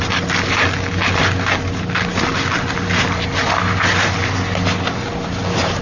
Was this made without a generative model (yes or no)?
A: yes